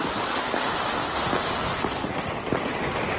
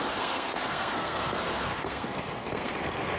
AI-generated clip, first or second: second